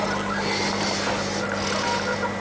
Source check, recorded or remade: recorded